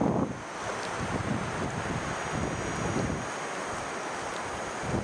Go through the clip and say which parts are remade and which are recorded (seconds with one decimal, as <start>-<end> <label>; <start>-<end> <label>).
0.0-5.0 recorded